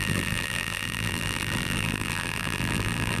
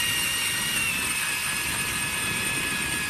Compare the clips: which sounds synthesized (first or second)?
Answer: first